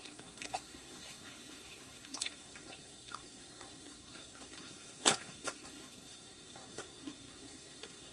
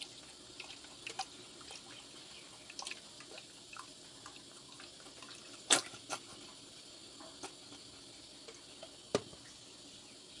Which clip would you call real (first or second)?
second